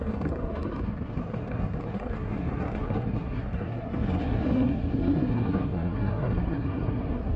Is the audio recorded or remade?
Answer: remade